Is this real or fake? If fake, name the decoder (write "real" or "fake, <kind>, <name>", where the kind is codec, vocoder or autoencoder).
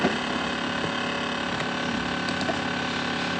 real